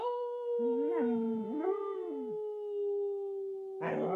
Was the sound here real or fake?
real